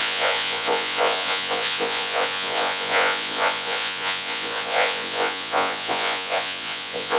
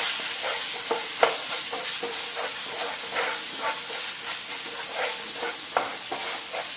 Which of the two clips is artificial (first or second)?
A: first